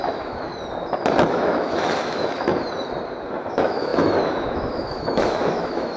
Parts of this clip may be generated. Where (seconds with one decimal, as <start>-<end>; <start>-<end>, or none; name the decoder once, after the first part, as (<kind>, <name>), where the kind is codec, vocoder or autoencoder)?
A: 0.0-0.5 (autoencoder, DAC-VAE); 1.3-2.5; 3.4-6.0